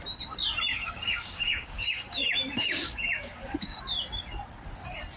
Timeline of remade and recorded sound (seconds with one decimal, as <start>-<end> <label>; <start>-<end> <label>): 0.0-0.7 recorded; 0.7-3.8 remade; 3.8-5.2 recorded